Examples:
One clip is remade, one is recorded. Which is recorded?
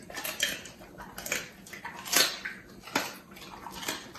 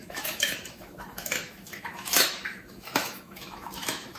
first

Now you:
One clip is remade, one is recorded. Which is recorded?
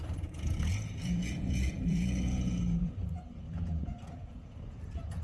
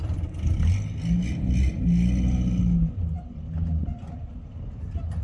second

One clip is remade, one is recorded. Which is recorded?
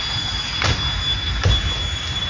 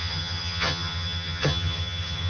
first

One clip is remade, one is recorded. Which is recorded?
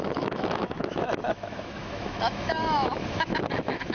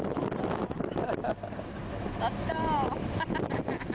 second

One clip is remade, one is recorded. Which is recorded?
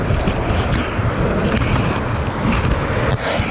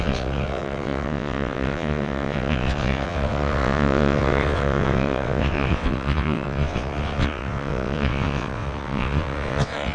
first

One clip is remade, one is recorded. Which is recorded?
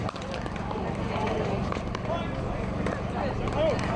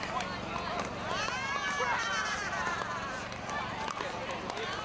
second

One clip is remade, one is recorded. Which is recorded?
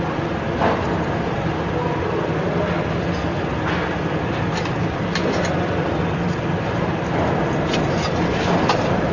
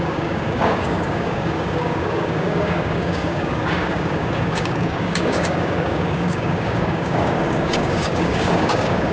first